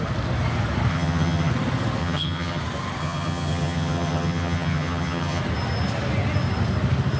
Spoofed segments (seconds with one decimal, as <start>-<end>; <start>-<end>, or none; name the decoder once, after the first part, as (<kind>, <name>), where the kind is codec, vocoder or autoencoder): 0.9-1.5 (vocoder, HiFi-GAN); 2.0-2.6; 3.0-5.4